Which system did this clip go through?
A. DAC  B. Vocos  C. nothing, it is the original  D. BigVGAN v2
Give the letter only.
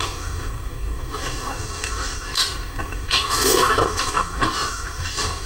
A